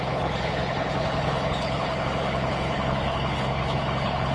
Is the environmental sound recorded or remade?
remade